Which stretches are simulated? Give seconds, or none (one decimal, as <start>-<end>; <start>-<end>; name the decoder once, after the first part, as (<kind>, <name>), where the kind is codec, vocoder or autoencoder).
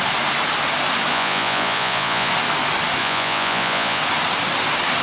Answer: 1.1-2.3 (vocoder, Vocos); 3.0-4.0